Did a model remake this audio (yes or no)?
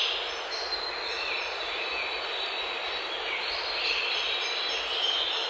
no